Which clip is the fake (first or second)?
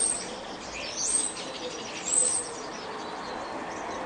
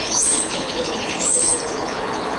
second